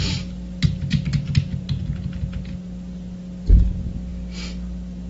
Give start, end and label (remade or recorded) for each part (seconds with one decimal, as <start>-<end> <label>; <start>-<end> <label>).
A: 0.0-5.1 recorded